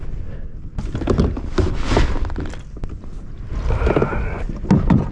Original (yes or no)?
yes